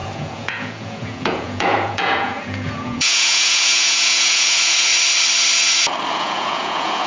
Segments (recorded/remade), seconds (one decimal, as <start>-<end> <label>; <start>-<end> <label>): 0.0-4.9 remade; 4.9-6.1 recorded; 6.1-7.1 remade